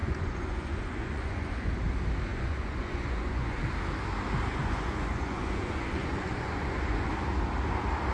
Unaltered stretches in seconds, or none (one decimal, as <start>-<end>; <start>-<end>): 1.7-2.3; 3.6-4.5; 7.1-8.1